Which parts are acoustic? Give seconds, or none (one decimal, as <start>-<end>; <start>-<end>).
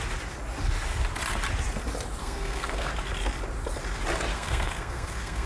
0.0-2.2; 2.9-4.3